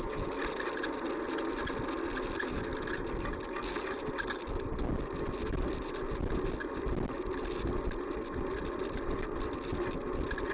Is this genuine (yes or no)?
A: yes